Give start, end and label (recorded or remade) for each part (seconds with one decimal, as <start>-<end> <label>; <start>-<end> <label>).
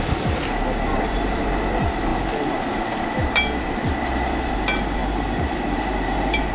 0.0-0.9 recorded; 0.9-1.5 remade; 1.5-5.0 recorded; 5.0-6.5 remade